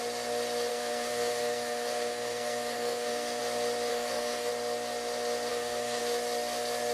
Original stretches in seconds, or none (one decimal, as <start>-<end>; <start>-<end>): 0.0-0.7; 3.4-3.9; 4.5-5.5; 6.0-6.9